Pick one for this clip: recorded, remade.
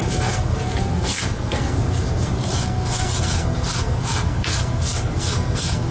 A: remade